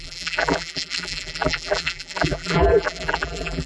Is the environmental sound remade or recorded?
remade